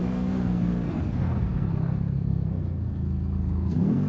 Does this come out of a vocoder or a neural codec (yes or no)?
yes